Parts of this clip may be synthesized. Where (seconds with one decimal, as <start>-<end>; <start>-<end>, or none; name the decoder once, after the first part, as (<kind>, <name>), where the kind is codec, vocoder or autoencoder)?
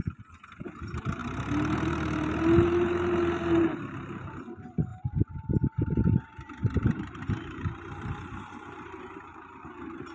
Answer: 0.6-1.2 (vocoder, BigVGAN v2); 3.6-4.9; 5.5-10.1